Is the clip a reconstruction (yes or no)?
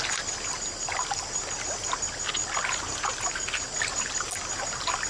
no